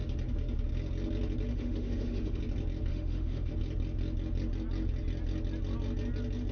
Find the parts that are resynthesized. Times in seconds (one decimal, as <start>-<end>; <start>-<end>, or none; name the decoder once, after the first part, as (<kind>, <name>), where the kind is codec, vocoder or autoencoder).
1.5-2.4 (autoencoder, DAC-VAE); 2.9-3.5